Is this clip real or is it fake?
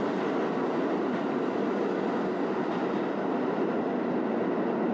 real